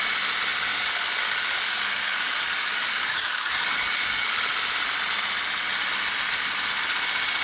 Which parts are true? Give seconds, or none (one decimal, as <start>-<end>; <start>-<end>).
0.0-0.5; 4.4-7.4